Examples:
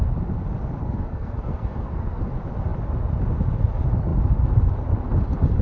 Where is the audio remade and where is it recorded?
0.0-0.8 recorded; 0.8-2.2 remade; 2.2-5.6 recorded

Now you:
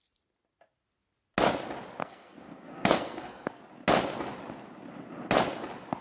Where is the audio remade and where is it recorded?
0.0-2.0 recorded; 2.0-3.6 remade; 3.6-6.0 recorded